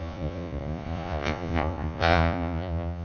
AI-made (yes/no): yes